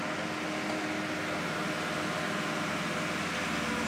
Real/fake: real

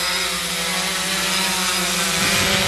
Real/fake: real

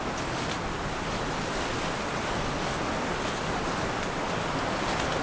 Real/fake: real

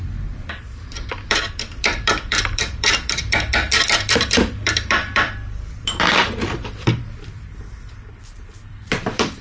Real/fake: fake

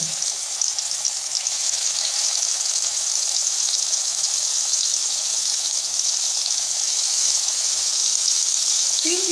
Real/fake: fake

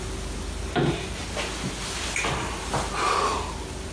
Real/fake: real